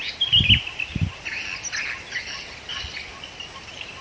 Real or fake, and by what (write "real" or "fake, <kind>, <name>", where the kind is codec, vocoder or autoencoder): real